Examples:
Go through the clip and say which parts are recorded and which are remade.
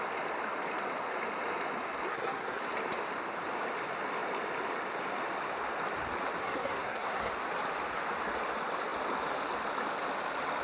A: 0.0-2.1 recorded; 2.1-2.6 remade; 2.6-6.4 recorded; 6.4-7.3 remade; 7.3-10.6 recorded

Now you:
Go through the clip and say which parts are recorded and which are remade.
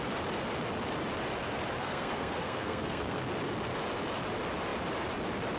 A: 0.0-1.8 recorded; 1.8-3.2 remade; 3.2-5.6 recorded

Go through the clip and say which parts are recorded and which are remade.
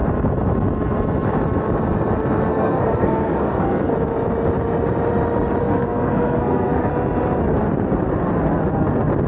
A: 0.0-2.5 recorded; 2.5-3.9 remade; 3.9-5.6 recorded; 5.6-6.9 remade; 6.9-9.3 recorded